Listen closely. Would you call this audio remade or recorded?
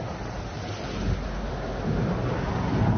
recorded